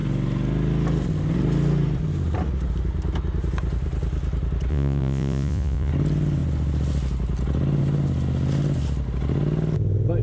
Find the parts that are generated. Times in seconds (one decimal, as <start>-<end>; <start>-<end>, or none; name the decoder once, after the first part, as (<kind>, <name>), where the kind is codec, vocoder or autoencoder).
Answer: 4.7-5.9 (vocoder, Vocos)